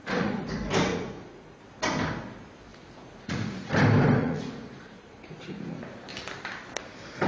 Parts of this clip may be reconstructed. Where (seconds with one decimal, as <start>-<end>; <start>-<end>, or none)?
0.0-0.5; 0.9-1.6; 2.7-3.7; 4.2-5.8